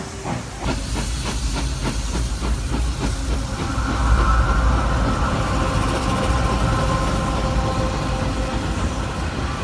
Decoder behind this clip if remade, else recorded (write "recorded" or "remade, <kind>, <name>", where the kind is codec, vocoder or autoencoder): recorded